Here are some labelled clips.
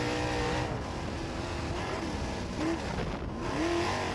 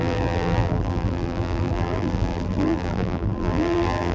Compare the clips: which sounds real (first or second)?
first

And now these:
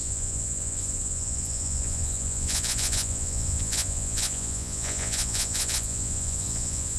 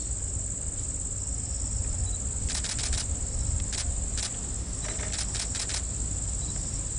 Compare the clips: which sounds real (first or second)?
second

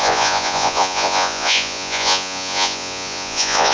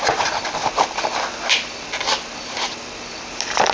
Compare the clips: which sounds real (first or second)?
second